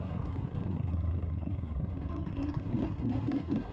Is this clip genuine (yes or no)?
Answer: no